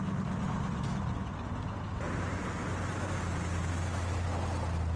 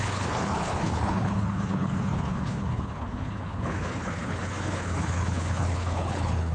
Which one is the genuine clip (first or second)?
first